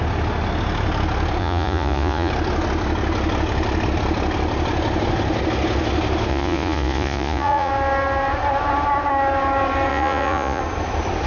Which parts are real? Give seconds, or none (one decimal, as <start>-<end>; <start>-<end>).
0.0-1.4; 2.3-6.3; 7.7-9.9; 10.6-11.3